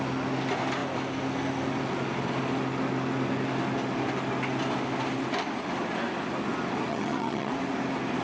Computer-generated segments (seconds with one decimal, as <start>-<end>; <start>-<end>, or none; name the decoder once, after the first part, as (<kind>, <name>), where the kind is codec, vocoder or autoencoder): 6.9-7.5 (vocoder, HiFi-GAN)